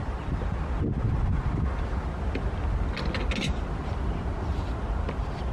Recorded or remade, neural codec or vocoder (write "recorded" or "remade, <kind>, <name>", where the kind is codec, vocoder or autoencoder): recorded